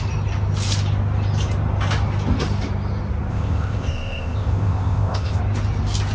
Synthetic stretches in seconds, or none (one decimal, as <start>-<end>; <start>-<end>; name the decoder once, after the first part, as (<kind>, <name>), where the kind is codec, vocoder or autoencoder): 3.3-5.4 (codec, ZipCodec)